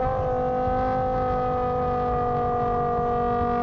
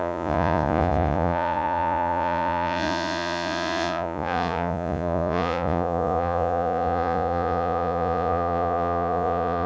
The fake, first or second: second